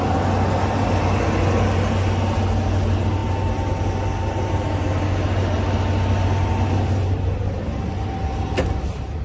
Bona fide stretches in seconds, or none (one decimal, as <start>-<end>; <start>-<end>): 0.0-9.2